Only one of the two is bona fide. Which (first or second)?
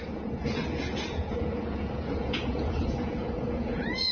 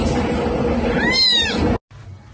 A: second